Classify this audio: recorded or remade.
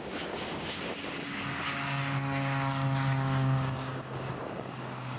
remade